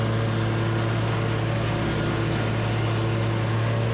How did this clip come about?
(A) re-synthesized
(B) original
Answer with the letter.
B